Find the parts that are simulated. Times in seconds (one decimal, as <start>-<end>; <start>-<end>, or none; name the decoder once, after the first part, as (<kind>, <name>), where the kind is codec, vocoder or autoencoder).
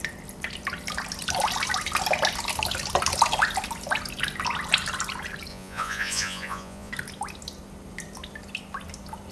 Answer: 5.5-6.9 (vocoder, Vocos)